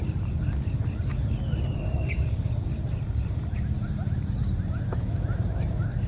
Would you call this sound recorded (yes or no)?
yes